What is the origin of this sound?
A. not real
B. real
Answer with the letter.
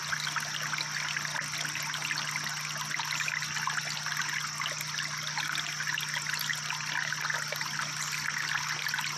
B